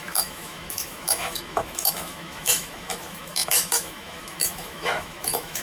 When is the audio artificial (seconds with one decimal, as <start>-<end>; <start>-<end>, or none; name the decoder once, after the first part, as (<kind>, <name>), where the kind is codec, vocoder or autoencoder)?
0.0-5.6 (autoencoder, DAC-VAE)